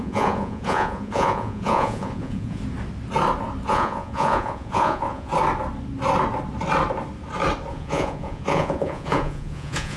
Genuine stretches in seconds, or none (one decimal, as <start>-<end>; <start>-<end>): 2.6-3.7; 5.3-7.7